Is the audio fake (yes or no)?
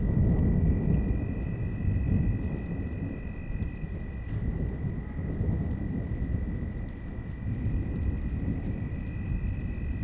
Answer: no